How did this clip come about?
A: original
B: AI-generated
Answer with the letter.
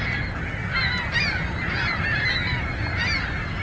A